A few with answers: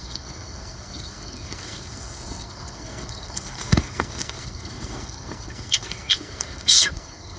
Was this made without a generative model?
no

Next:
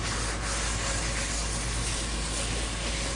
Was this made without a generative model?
yes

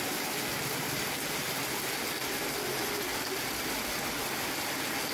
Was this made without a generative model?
yes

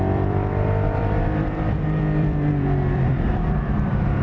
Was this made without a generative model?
no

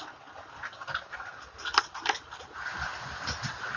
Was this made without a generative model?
yes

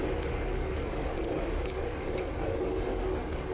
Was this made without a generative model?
no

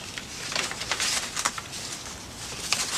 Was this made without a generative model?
yes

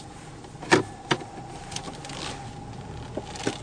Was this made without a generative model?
yes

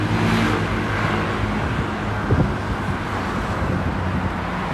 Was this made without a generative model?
yes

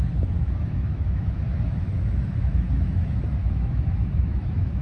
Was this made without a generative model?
no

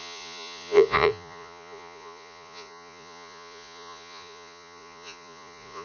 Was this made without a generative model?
no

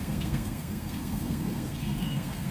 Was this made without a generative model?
no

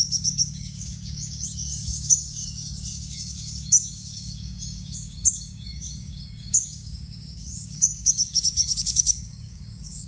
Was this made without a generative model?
no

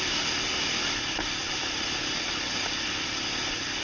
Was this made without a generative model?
yes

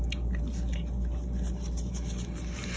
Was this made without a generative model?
yes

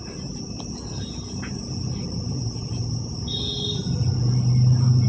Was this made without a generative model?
yes